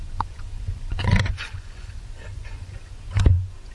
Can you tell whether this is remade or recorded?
remade